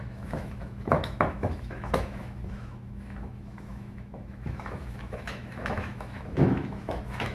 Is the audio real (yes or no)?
no